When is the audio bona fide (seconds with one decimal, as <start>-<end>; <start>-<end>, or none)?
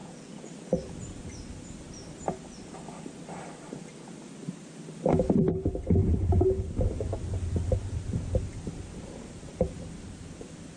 0.5-10.8